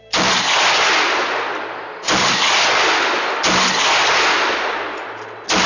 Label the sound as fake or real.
real